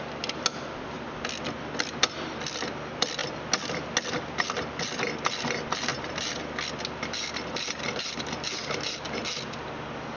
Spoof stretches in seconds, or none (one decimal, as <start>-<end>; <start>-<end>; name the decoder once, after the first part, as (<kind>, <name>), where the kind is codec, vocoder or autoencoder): none